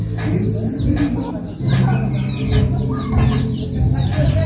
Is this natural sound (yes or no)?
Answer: yes